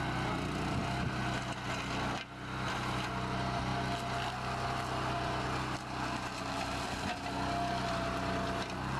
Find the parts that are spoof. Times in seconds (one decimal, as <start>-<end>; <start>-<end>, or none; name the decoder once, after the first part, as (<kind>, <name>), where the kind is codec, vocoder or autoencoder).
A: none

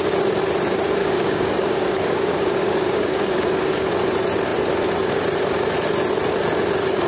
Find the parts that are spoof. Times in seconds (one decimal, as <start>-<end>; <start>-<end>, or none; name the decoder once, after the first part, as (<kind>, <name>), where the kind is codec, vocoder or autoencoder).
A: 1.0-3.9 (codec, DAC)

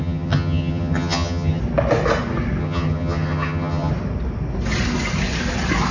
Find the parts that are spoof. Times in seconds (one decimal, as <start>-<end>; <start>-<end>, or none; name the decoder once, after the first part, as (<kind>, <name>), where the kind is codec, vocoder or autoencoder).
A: 0.0-1.6 (vocoder, HiFi-GAN); 2.6-3.9